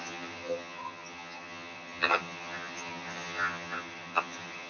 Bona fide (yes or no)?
no